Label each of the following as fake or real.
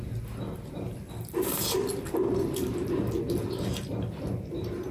real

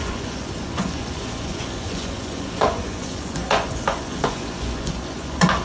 fake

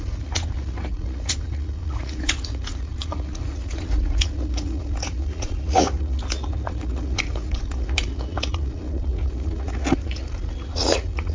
fake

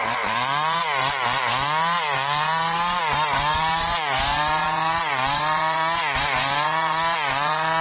fake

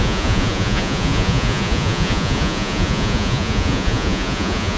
fake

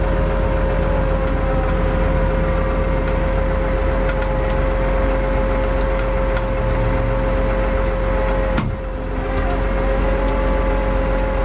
real